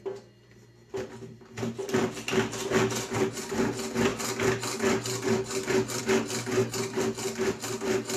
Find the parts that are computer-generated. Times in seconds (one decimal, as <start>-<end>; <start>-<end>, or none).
none